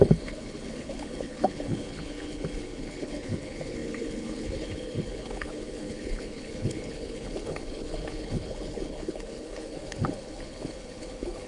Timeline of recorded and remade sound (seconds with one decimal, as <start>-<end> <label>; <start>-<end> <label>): 0.0-11.5 remade